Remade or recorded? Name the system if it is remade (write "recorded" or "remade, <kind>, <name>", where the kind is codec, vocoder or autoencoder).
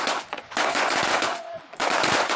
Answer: remade, vocoder, Vocos